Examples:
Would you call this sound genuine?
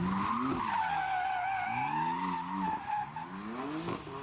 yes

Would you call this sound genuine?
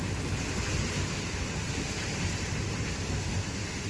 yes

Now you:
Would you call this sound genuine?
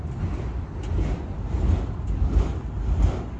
yes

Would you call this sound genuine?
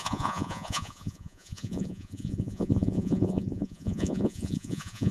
no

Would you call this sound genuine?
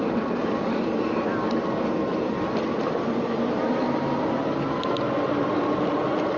yes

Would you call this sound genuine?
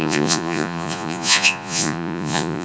no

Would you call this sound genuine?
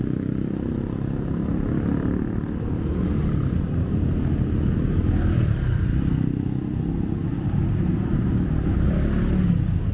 yes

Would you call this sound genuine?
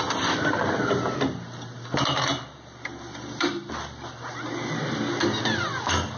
yes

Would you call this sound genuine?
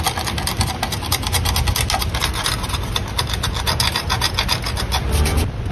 yes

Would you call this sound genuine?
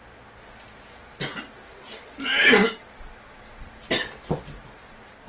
yes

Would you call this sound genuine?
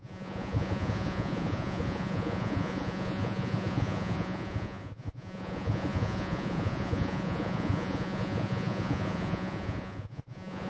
no